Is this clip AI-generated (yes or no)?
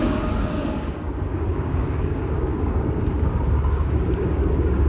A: yes